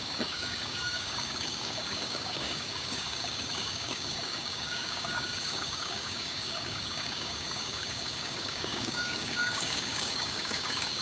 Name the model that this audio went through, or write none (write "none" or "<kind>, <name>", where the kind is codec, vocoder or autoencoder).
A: codec, DAC